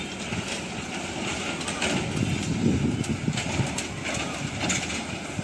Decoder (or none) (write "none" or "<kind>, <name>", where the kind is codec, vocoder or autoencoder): none